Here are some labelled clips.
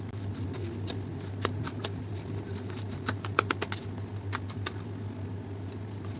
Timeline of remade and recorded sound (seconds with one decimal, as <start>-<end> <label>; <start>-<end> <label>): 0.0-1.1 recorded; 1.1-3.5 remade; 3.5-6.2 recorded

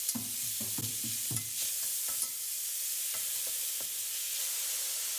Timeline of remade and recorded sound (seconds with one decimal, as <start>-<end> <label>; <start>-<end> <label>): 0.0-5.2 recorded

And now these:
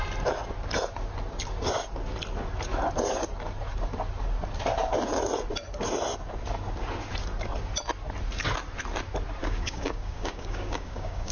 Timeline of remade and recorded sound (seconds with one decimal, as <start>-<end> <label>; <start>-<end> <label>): 0.0-9.4 recorded; 9.4-11.3 remade

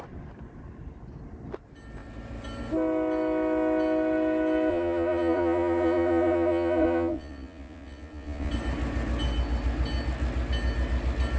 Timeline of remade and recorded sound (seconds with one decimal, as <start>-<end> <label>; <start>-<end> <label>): 0.0-4.7 recorded; 4.7-8.5 remade; 8.5-11.4 recorded

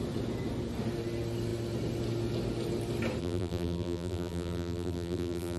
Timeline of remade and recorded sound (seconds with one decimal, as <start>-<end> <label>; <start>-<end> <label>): 0.0-3.2 recorded; 3.2-5.6 remade